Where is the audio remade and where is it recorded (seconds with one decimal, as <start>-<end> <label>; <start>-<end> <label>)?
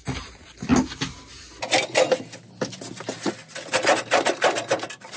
0.0-5.2 recorded